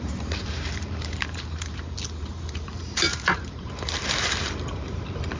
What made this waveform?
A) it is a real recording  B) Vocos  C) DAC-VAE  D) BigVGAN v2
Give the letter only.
D